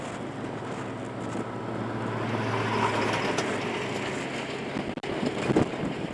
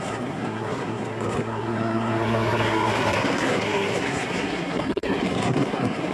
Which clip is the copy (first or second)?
second